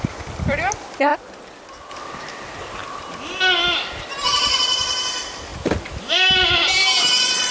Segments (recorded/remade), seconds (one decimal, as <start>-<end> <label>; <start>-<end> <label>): 0.0-7.5 recorded